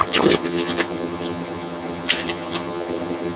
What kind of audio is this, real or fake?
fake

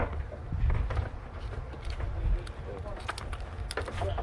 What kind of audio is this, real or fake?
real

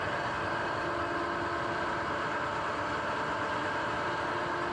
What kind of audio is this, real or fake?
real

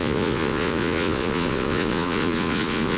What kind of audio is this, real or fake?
fake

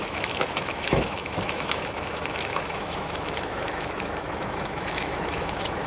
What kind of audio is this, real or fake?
fake